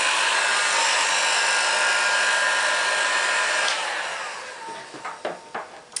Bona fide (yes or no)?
yes